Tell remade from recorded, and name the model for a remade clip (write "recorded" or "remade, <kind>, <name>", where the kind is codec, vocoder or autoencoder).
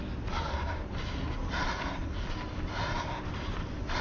recorded